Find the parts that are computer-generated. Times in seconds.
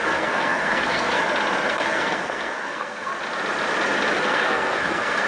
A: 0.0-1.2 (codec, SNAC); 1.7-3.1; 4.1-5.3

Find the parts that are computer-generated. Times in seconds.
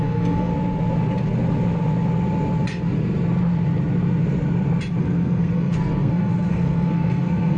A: 0.0-0.5 (codec, SNAC); 5.0-7.6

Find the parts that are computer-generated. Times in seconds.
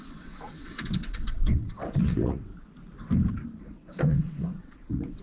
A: 0.0-2.5 (vocoder, WaveNeXt); 3.6-5.2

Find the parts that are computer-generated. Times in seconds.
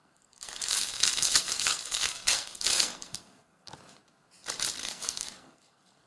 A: 0.0-3.7 (codec, SNAC); 4.8-6.1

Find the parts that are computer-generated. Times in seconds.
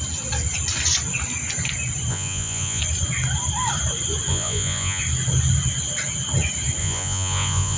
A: 2.1-2.8 (vocoder, Vocos); 4.3-5.0; 6.8-7.8